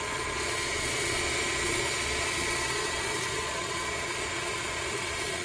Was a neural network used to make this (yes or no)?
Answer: yes